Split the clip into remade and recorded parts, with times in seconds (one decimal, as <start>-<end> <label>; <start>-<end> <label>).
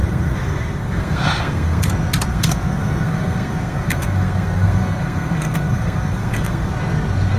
0.0-1.9 remade; 1.9-2.3 recorded; 2.3-6.7 remade; 6.7-7.4 recorded